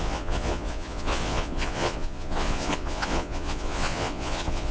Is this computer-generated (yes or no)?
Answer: yes